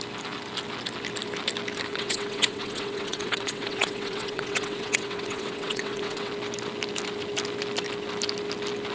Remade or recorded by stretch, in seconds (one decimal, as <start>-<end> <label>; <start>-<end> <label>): 0.0-1.9 recorded; 1.9-6.3 remade; 6.3-8.9 recorded